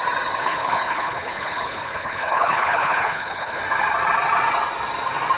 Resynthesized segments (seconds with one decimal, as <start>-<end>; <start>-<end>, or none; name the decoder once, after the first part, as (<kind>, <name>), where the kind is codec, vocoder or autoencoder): 0.4-3.6 (codec, HILCodec)